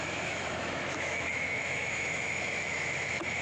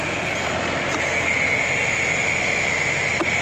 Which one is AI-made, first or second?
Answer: first